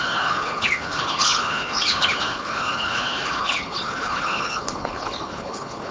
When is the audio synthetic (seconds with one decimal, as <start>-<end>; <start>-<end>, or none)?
0.0-5.9